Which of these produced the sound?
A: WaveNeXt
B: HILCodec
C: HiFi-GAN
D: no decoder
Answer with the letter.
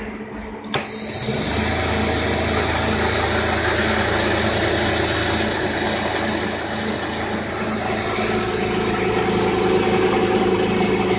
D